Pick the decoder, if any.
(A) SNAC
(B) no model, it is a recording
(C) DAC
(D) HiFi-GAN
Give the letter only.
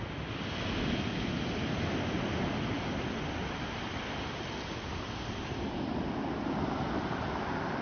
B